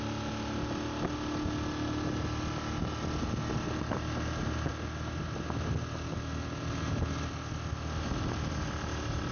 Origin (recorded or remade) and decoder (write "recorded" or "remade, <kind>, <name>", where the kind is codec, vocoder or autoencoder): recorded